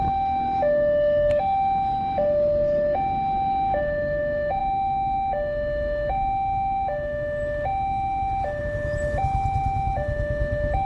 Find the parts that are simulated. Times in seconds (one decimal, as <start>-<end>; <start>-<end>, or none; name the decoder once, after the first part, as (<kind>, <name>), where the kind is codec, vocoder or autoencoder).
none